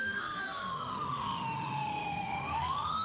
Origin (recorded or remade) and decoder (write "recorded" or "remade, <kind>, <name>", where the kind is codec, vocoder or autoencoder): remade, autoencoder, DAC-VAE